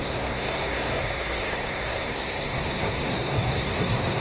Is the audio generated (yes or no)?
yes